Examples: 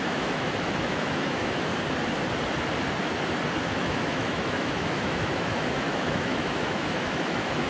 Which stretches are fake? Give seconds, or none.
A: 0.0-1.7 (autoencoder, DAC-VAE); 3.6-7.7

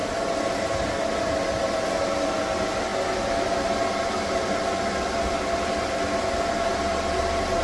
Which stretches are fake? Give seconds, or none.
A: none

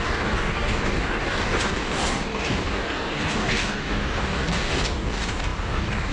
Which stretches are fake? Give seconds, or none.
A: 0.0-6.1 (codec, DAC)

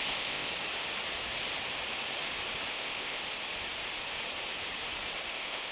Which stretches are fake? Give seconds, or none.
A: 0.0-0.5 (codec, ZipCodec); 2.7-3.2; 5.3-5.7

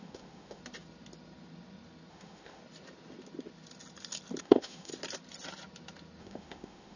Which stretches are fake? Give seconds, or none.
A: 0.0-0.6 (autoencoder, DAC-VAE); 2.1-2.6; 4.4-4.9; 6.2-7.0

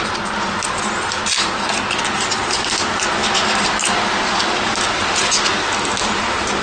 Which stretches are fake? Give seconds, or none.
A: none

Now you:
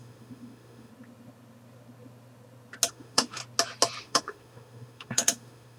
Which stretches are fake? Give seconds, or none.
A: 0.0-0.9 (autoencoder, DAC-VAE); 2.9-3.4; 4.0-5.8

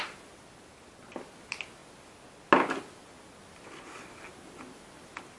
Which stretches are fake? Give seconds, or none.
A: none